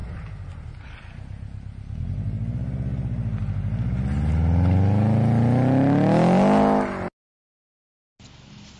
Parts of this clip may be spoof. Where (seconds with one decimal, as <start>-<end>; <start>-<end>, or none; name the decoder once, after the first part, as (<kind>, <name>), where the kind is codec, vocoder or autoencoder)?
none

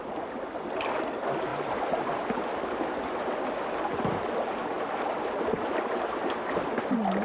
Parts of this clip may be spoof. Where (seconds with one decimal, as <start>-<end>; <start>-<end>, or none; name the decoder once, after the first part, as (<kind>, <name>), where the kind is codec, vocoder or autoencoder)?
none